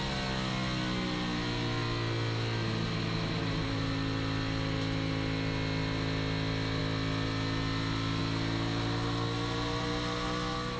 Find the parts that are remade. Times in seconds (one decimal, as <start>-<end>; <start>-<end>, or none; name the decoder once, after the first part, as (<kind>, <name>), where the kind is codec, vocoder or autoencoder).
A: none